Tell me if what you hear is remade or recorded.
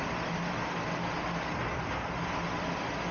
recorded